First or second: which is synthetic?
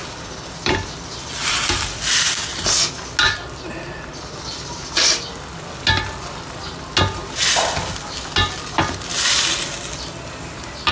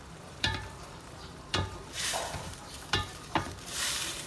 second